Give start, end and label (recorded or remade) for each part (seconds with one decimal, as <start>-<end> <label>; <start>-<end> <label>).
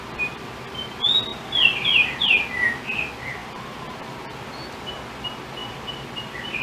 0.0-1.3 recorded; 1.3-2.4 remade; 2.4-3.4 recorded; 3.4-4.0 remade; 4.0-5.6 recorded; 5.6-6.6 remade